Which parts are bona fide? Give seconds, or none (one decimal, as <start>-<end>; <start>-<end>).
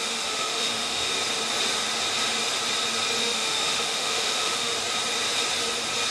1.1-3.2; 4.7-6.1